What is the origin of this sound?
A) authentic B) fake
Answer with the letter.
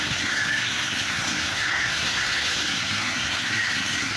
B